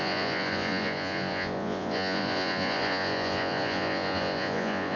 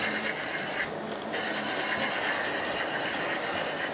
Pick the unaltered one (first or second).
second